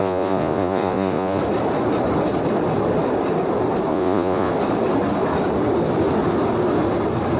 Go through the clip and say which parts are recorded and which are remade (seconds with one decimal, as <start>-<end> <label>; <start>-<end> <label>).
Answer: 0.0-1.4 remade; 1.4-3.9 recorded; 3.9-4.5 remade; 4.5-7.4 recorded

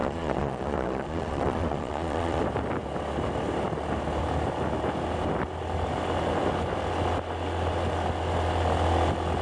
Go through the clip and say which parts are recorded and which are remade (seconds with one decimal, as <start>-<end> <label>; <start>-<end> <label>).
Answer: 0.0-2.4 remade; 2.4-9.4 recorded